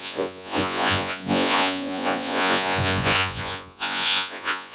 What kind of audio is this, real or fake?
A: fake